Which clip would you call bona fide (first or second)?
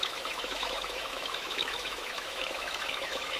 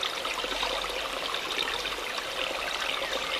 second